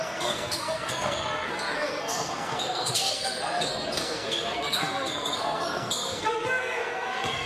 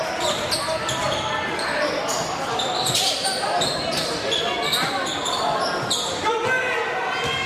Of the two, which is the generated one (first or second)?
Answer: first